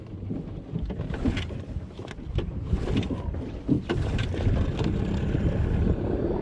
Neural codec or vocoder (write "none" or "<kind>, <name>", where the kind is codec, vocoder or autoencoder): none